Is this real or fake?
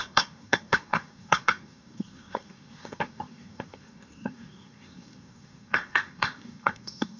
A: fake